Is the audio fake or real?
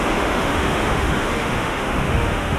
fake